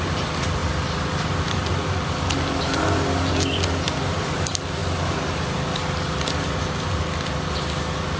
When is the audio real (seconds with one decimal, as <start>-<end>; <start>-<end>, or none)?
0.0-8.2